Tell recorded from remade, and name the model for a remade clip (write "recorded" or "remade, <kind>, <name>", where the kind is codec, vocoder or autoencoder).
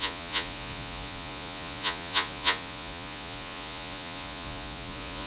remade, vocoder, Vocos